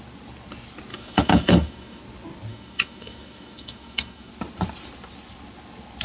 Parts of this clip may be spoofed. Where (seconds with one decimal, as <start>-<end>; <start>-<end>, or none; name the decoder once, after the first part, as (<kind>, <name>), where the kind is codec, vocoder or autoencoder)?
0.9-2.0 (autoencoder, DAC-VAE); 2.5-4.3